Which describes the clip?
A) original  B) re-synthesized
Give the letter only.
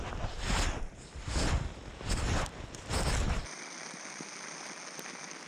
A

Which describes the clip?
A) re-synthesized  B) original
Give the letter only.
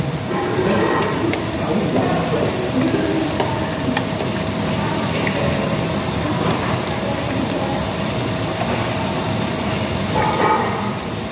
A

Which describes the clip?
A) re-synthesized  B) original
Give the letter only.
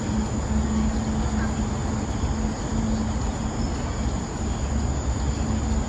B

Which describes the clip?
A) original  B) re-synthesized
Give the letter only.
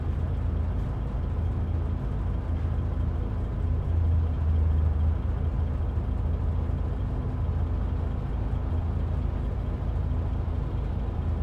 A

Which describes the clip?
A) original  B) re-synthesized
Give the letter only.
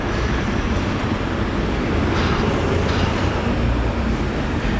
B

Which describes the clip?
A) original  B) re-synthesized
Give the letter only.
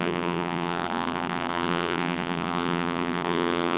B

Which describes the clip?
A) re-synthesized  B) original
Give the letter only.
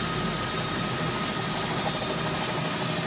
B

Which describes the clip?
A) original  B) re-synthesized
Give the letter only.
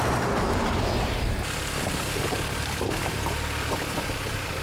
B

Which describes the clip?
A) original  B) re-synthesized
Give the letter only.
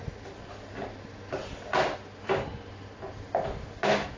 A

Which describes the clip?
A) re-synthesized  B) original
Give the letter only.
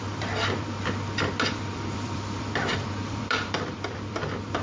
A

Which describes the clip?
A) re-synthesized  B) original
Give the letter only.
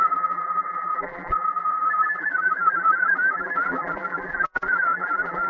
A